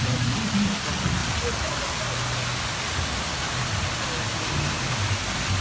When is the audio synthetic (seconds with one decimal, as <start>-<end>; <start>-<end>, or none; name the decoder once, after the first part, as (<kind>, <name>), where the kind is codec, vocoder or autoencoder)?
none